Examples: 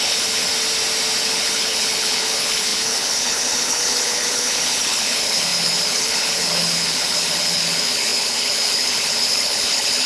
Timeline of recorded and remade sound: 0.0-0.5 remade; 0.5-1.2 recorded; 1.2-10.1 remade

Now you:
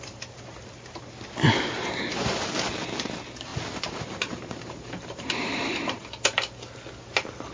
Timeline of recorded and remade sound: 0.0-3.5 recorded; 3.5-6.0 remade; 6.0-7.5 recorded